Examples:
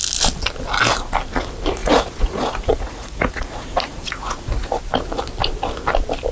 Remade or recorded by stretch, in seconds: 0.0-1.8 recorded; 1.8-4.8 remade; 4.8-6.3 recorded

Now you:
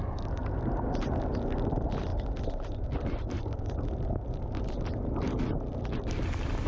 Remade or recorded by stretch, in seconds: 0.0-6.7 recorded

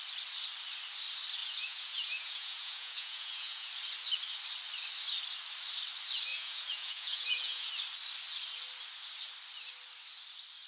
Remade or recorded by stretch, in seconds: 0.0-1.4 recorded; 1.4-3.7 remade; 3.7-6.3 recorded; 6.3-7.7 remade; 7.7-10.7 recorded

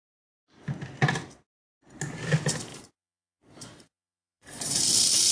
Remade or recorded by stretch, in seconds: 0.0-2.7 recorded; 2.7-4.8 remade; 4.8-5.3 recorded